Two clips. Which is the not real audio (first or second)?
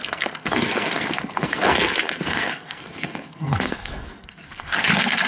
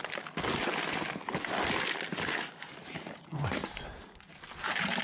first